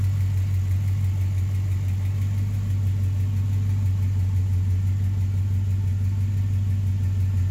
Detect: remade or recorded recorded